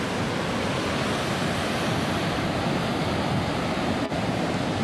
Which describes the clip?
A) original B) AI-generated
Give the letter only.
A